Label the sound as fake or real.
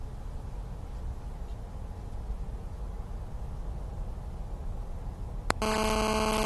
real